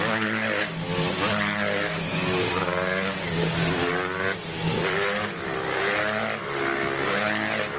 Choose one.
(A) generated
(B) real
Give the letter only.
B